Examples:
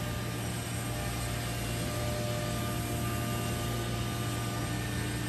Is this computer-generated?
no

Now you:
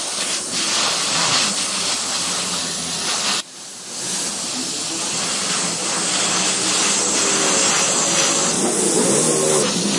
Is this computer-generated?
no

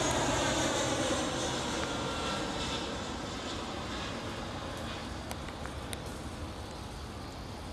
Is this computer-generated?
no